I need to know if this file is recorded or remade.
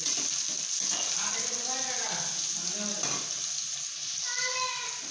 recorded